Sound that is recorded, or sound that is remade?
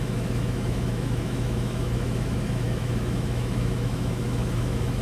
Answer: remade